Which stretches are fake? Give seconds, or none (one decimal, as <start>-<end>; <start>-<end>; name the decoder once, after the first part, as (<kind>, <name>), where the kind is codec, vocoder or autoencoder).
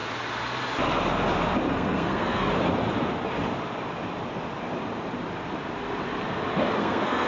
1.7-2.5 (codec, SNAC); 6.8-7.3